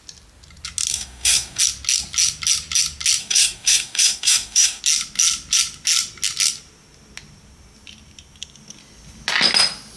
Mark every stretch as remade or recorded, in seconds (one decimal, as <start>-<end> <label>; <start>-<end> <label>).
0.0-0.9 recorded; 0.9-1.6 remade; 1.6-3.2 recorded; 3.2-4.8 remade; 4.8-10.0 recorded